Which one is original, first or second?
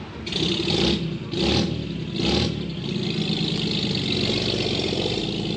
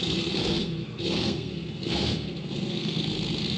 first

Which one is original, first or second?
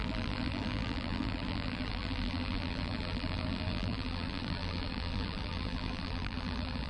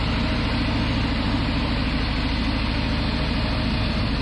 second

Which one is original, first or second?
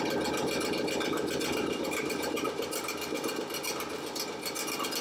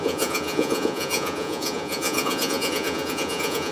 first